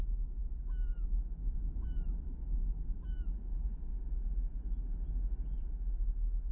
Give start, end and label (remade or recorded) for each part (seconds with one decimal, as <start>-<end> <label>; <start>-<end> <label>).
0.0-6.5 recorded